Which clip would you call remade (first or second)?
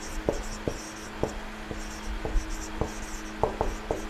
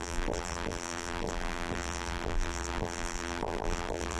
second